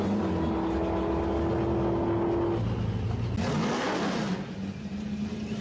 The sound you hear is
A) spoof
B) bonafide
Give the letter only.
B